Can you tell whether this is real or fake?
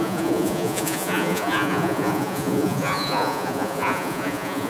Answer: fake